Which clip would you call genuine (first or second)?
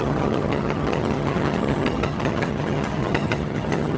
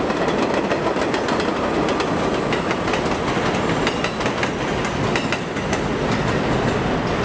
second